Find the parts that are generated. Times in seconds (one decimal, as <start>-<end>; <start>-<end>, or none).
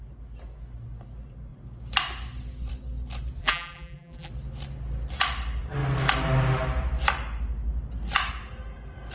3.4-4.3